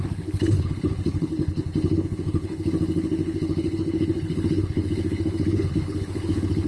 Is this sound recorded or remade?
remade